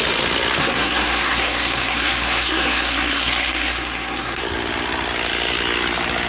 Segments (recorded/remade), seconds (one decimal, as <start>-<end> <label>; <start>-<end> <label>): 0.0-0.6 recorded; 0.6-4.4 remade; 4.4-6.3 recorded